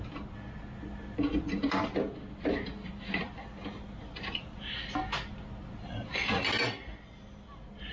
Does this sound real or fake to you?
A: real